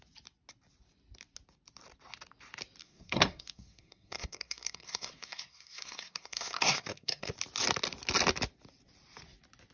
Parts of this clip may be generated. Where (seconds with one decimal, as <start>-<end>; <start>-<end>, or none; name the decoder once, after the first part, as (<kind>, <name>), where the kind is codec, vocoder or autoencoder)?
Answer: 2.8-7.3 (codec, SNAC)